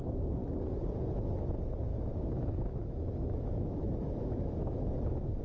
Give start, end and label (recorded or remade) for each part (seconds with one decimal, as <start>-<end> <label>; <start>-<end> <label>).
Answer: 0.0-1.9 recorded; 1.9-5.4 remade